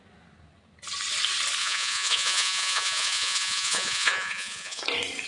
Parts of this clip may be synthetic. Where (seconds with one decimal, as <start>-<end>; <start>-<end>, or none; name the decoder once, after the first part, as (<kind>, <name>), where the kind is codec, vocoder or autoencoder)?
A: 1.6-4.8 (vocoder, Vocos)